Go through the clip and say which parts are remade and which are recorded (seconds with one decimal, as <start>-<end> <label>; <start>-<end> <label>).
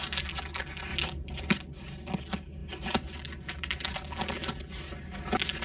0.0-5.6 recorded